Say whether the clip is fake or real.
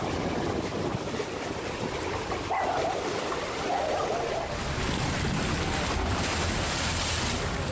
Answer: real